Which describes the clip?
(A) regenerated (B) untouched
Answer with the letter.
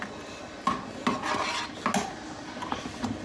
B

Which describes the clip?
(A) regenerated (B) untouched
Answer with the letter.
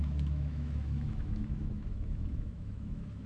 A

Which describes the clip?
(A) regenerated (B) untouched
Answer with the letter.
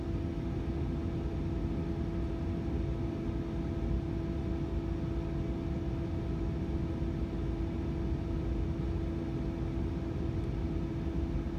B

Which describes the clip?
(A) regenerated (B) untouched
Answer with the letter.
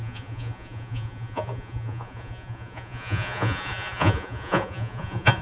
A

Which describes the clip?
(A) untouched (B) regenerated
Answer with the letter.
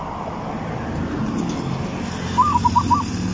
A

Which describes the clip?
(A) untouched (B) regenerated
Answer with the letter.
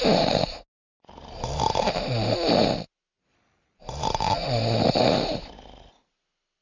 A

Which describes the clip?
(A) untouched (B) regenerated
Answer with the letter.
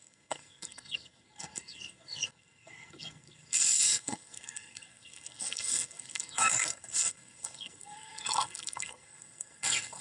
B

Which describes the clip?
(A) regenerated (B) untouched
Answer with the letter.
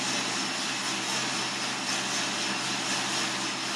B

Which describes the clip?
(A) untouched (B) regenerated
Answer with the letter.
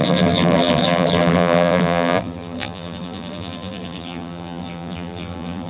B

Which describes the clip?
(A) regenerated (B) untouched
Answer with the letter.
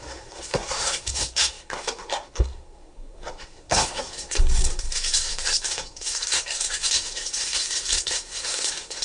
A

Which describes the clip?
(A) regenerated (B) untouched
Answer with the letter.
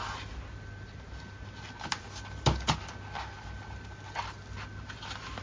B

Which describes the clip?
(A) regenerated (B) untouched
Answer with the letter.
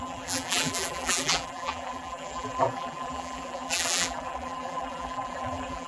A